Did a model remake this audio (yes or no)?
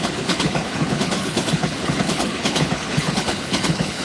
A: yes